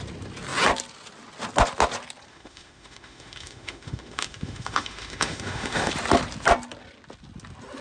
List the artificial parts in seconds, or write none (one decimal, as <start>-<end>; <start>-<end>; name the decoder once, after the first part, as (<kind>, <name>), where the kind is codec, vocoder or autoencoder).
2.3-5.9 (autoencoder, DAC-VAE)